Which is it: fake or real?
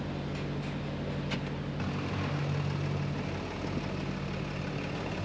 real